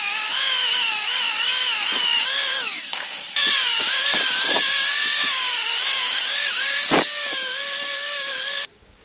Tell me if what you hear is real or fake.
fake